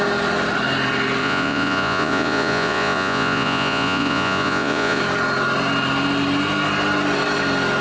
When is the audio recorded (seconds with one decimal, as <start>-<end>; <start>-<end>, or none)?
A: 0.0-1.2; 5.0-7.8